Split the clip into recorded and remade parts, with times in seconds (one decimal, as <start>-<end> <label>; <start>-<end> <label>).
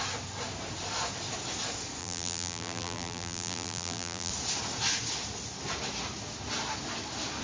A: 0.0-2.0 recorded; 2.0-4.3 remade; 4.3-7.4 recorded